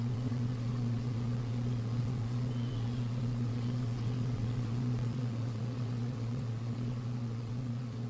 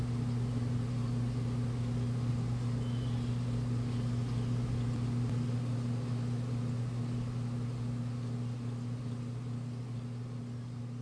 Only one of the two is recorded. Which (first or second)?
second